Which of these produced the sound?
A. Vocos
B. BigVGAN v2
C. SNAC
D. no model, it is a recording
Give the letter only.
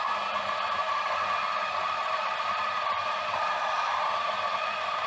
D